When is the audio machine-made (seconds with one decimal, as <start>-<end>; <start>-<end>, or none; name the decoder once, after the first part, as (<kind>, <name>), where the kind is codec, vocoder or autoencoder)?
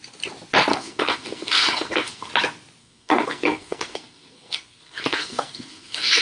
0.7-2.3 (codec, SNAC); 2.8-6.2